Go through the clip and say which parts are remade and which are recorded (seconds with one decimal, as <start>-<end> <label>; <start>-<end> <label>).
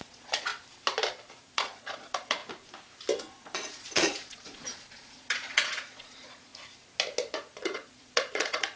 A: 0.0-0.5 remade; 0.5-1.5 recorded; 1.5-2.4 remade; 2.4-3.2 recorded; 3.2-6.5 remade; 6.5-7.3 recorded; 7.3-8.8 remade